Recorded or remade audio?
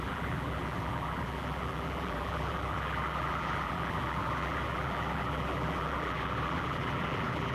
remade